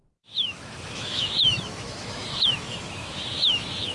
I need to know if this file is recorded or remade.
remade